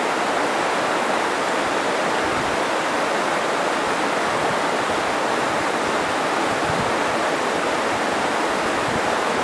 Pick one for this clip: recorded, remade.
recorded